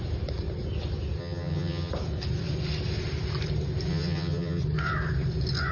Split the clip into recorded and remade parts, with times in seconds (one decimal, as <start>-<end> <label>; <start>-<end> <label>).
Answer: 0.0-1.2 recorded; 1.2-1.9 remade; 1.9-3.9 recorded; 3.9-4.6 remade; 4.6-5.7 recorded